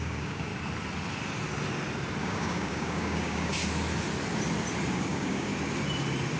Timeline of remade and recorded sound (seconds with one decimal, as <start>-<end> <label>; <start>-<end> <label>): 0.0-0.5 remade; 0.5-2.2 recorded; 2.2-3.6 remade; 3.6-4.9 recorded; 4.9-5.5 remade; 5.5-6.4 recorded